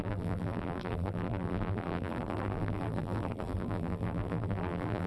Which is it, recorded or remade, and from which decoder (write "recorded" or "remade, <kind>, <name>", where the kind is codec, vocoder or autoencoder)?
remade, vocoder, BigVGAN v2